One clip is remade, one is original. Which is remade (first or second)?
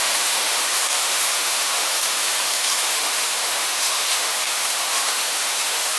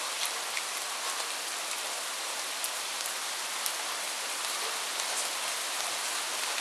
first